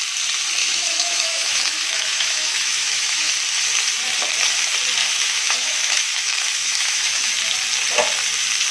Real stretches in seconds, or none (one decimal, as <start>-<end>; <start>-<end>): 0.0-0.6; 3.3-5.0; 7.3-8.7